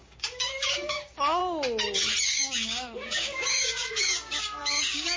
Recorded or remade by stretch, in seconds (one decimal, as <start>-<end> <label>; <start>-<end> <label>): 0.0-1.4 remade; 1.4-2.2 recorded; 2.2-5.2 remade